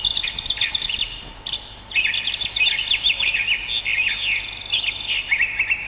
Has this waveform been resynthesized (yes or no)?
no